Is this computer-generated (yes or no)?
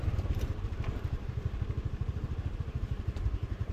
yes